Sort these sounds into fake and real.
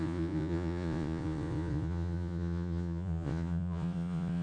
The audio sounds fake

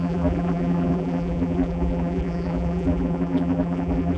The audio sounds fake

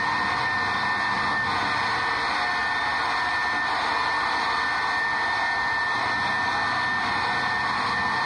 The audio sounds real